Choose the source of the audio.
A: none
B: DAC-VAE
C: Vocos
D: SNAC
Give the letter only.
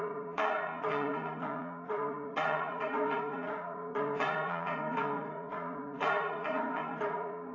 C